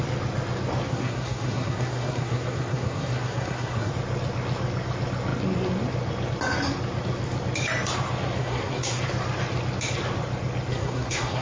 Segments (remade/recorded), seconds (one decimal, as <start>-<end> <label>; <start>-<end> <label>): 0.0-0.9 recorded; 0.9-3.9 remade; 3.9-8.4 recorded; 8.4-9.0 remade; 9.0-10.7 recorded; 10.7-11.4 remade